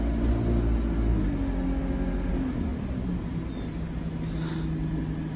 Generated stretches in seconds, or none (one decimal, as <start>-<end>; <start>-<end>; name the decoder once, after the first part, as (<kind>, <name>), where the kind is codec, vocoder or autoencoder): none

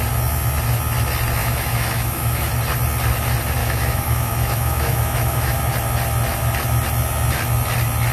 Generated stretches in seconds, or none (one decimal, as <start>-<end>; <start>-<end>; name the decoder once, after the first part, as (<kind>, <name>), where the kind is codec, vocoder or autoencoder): 1.4-2.5 (autoencoder, DAC-VAE); 3.6-5.6

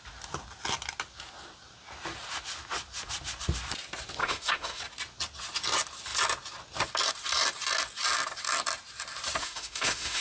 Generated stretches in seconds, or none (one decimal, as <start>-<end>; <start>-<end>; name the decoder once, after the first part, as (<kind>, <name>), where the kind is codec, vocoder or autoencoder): 4.2-4.8 (autoencoder, DAC-VAE); 9.4-10.2

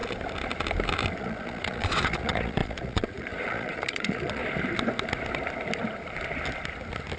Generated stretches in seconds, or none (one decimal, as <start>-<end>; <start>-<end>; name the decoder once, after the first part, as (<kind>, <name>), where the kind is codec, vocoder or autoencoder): 1.2-4.4 (vocoder, Vocos)

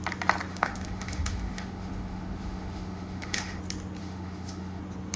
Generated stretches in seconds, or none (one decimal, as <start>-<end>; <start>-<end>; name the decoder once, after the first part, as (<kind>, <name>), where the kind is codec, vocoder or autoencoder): 0.5-3.6 (autoencoder, DAC-VAE); 4.0-4.8

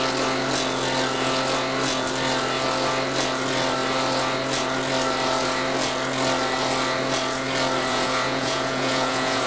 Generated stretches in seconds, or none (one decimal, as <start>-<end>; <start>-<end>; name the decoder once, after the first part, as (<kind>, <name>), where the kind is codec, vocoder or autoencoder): 7.9-9.5 (vocoder, Vocos)